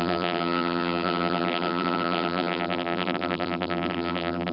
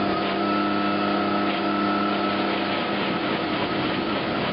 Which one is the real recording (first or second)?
second